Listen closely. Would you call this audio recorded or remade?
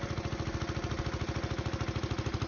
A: recorded